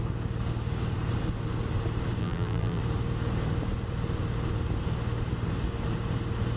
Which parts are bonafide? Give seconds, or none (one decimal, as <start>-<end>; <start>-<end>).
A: 0.0-2.2; 2.8-6.6